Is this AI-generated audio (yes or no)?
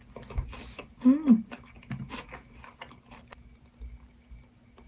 no